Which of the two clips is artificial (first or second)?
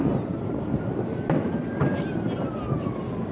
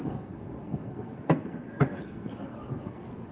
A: second